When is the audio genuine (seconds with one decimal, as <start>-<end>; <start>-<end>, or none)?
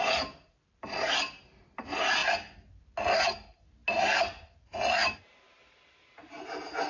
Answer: 0.0-6.9